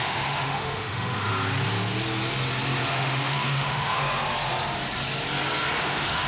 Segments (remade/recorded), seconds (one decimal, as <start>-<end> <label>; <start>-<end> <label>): 0.0-1.3 remade; 1.3-2.9 recorded; 2.9-4.0 remade; 4.0-5.8 recorded; 5.8-6.3 remade